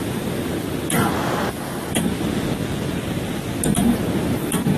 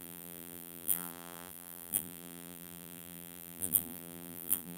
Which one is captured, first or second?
first